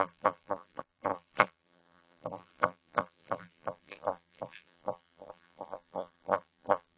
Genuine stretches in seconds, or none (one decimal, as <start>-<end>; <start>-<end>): none